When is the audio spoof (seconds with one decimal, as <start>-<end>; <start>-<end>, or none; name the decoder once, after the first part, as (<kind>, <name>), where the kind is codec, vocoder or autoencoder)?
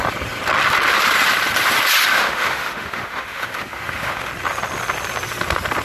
2.1-4.3 (autoencoder, DAC-VAE)